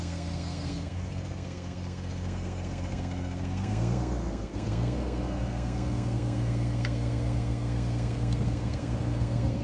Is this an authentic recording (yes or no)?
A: no